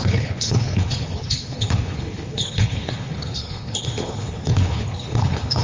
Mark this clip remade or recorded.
remade